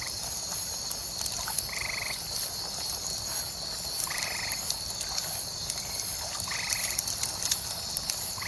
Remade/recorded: recorded